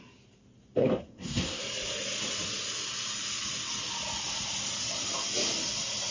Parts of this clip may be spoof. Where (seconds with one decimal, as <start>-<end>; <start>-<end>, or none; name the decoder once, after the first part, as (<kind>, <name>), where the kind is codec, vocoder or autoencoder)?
0.8-1.6 (codec, SNAC)